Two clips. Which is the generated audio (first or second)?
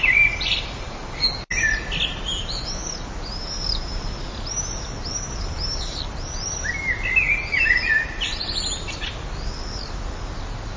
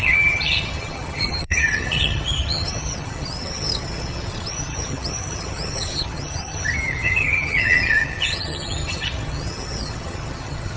second